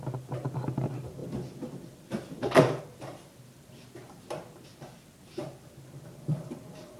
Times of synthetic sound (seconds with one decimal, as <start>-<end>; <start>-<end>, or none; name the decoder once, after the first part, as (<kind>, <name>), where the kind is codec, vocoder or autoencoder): none